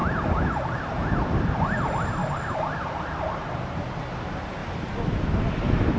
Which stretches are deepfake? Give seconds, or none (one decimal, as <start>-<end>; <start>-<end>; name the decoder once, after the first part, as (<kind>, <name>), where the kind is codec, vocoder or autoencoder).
2.2-3.8 (vocoder, BigVGAN v2)